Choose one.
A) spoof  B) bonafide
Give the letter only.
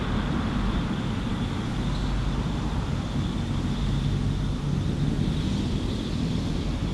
B